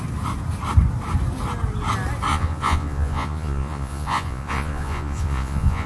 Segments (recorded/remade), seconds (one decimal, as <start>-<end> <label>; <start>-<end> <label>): 0.0-2.3 recorded; 2.3-5.9 remade

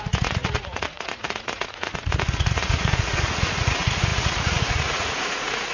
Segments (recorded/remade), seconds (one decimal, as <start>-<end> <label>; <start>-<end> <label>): 0.0-5.7 remade